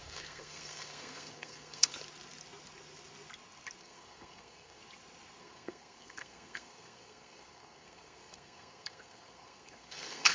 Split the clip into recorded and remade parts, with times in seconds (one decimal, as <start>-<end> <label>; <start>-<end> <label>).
0.0-1.9 remade; 1.9-3.8 recorded; 3.8-4.8 remade; 4.8-5.4 recorded; 5.4-10.3 remade

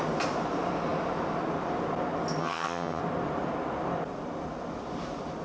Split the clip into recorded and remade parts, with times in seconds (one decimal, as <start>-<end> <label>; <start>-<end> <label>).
0.0-2.4 recorded; 2.4-3.0 remade; 3.0-5.4 recorded

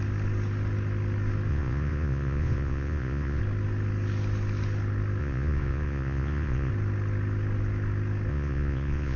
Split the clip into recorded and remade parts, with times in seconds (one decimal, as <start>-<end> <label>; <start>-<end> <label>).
0.0-1.5 recorded; 1.5-3.4 remade; 3.4-5.2 recorded; 5.2-6.7 remade; 6.7-8.3 recorded; 8.3-9.2 remade

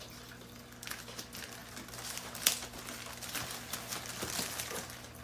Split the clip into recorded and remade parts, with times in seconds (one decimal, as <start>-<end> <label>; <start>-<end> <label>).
0.0-5.2 recorded